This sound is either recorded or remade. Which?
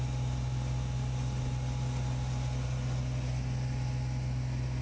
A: recorded